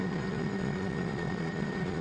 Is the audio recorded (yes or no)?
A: no